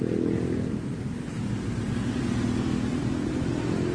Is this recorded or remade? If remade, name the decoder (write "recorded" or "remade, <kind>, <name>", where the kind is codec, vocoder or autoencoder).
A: recorded